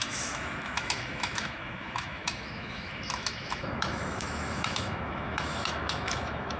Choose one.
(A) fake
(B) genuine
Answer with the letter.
A